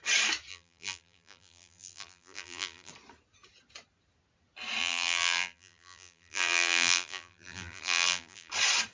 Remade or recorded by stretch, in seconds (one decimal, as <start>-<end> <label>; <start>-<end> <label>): 0.0-0.5 recorded; 0.5-2.9 remade; 2.9-4.8 recorded; 4.8-8.5 remade; 8.5-8.9 recorded